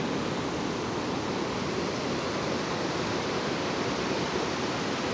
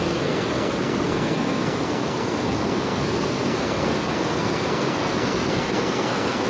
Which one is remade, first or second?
second